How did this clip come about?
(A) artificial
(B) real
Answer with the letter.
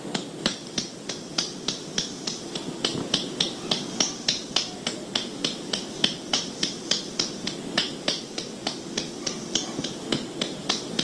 B